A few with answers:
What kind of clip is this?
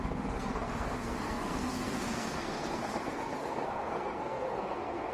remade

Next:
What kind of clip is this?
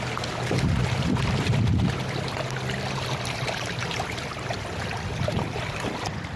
recorded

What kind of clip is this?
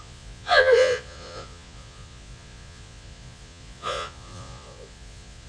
remade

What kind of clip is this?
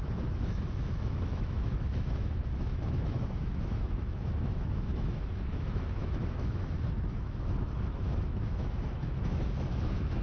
remade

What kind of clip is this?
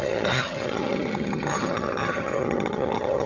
remade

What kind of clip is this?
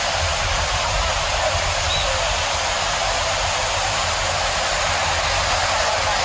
recorded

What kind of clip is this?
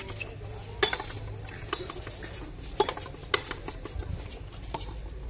recorded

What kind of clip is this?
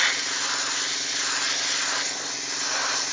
recorded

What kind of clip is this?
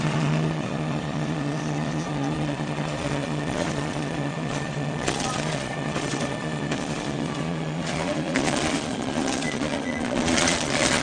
remade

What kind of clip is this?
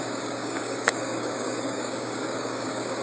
remade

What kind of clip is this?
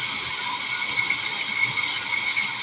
recorded